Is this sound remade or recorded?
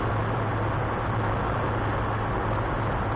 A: recorded